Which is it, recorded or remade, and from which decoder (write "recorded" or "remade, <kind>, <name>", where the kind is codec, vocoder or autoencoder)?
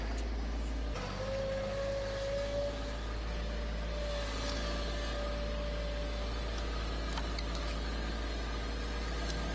recorded